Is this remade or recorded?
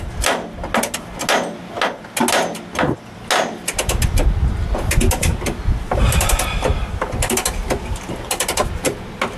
recorded